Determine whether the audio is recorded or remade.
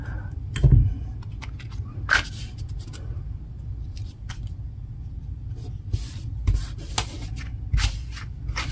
recorded